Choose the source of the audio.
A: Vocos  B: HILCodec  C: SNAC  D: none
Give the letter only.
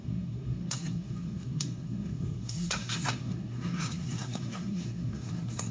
C